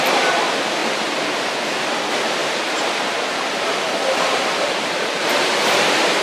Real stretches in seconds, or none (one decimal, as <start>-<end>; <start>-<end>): 0.0-0.8; 1.5-2.4